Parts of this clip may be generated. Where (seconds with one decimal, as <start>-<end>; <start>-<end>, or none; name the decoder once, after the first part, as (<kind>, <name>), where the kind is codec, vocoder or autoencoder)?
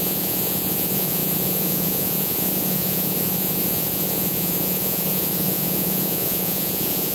0.0-7.1 (vocoder, Vocos)